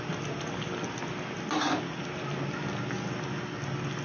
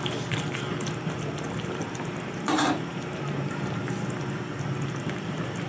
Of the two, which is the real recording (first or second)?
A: first